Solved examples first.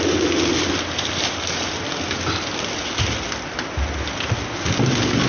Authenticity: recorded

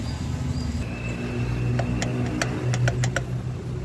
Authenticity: recorded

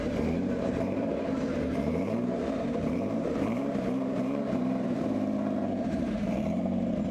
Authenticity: remade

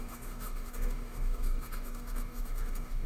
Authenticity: remade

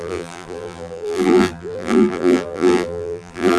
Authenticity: remade